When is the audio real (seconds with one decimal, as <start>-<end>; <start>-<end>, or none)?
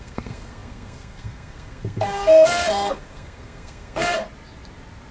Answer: 4.2-5.1